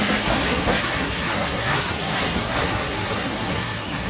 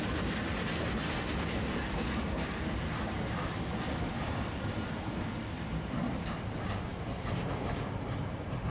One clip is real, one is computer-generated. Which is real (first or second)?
second